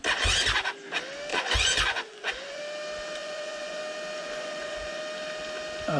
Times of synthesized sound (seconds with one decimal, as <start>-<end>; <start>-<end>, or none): 1.3-2.6; 3.2-3.8; 4.2-5.0